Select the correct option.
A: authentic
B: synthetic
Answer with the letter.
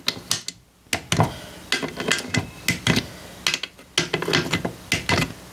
A